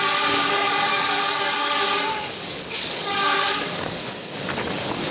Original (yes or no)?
no